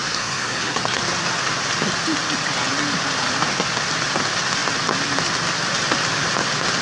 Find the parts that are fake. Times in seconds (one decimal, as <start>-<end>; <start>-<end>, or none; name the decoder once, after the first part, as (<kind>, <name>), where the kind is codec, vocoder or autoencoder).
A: 0.0-1.0 (codec, SNAC)